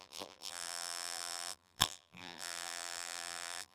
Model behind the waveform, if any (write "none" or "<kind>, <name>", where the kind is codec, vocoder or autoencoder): vocoder, BigVGAN v2